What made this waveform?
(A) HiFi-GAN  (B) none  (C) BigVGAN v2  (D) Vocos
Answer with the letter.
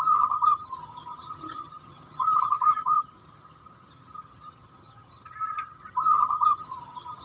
A